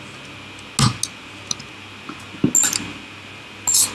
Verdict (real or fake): real